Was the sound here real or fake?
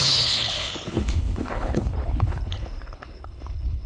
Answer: fake